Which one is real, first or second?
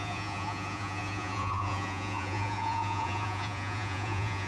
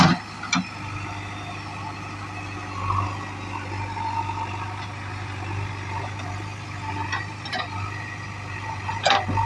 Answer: second